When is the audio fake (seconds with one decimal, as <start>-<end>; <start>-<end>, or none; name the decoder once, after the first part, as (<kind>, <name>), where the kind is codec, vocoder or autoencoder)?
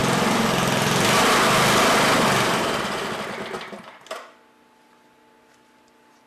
none